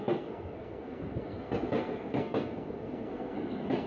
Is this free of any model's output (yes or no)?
no